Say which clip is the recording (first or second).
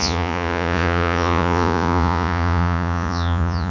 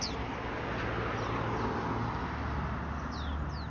second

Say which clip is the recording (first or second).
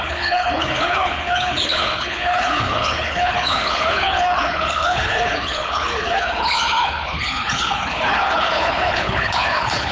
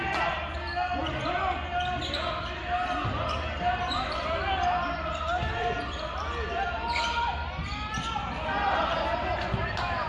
second